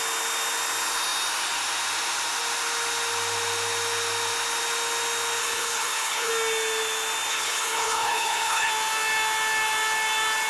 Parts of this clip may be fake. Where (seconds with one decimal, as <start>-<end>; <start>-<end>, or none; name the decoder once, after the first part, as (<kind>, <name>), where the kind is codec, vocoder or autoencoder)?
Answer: 5.4-6.3 (codec, HILCodec); 7.3-8.7